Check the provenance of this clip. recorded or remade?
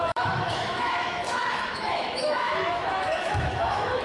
remade